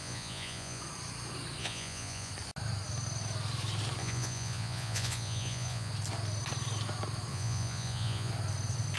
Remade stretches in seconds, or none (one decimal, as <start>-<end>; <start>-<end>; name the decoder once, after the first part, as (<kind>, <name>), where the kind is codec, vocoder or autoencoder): 0.0-0.8 (vocoder, Vocos); 1.6-2.3; 4.0-5.9; 7.3-8.3